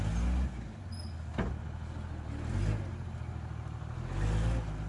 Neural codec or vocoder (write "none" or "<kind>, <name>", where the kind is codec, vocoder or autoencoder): none